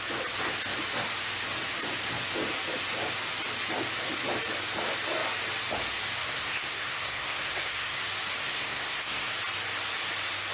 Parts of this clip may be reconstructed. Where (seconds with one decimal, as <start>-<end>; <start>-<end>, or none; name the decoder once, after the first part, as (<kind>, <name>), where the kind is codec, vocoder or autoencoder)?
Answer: 6.2-8.0 (codec, SNAC); 8.4-9.3